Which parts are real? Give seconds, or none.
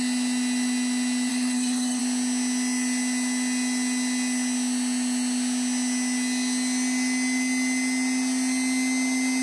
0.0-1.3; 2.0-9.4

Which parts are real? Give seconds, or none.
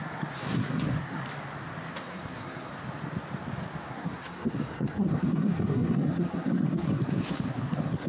1.2-1.9; 2.7-3.9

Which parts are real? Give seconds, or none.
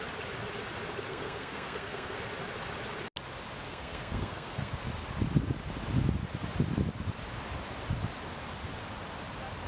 0.0-1.1; 2.2-3.7; 4.7-9.7